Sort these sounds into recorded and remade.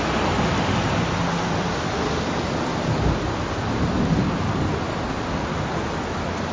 recorded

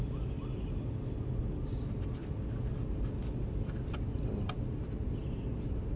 recorded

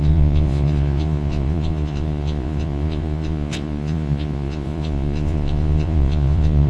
remade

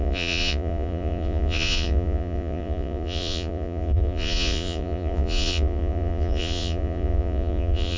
remade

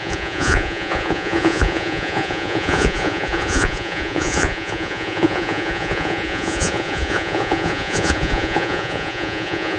remade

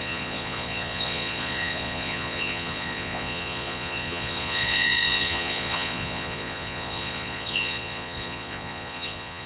remade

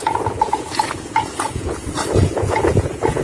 remade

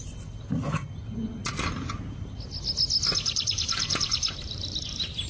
recorded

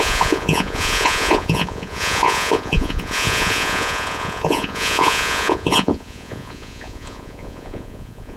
remade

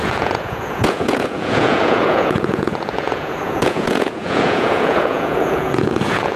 remade